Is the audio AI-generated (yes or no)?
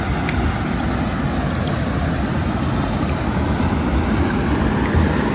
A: no